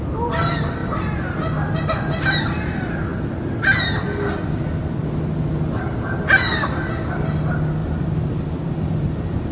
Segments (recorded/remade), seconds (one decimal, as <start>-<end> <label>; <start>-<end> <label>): 0.0-7.8 recorded; 7.8-9.5 remade